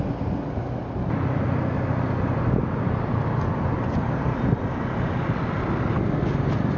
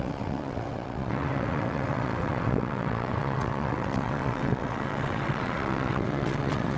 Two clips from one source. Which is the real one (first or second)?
first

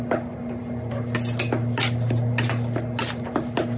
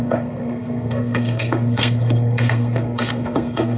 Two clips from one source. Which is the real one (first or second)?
first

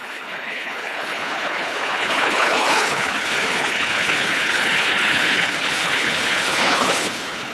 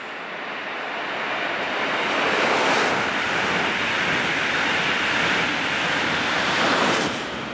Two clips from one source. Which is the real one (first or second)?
second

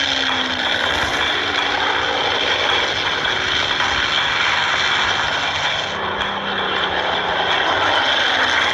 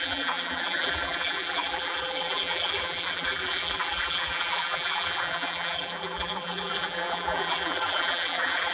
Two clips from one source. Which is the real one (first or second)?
first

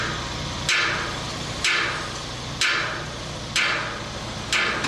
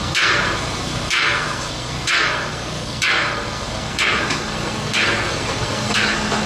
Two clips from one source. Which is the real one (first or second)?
first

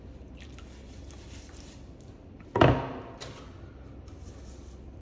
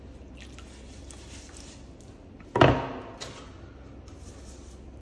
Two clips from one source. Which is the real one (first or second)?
second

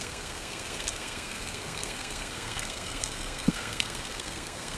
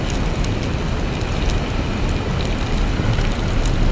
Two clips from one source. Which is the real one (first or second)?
second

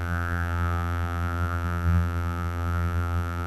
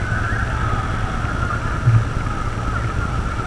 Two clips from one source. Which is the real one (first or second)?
second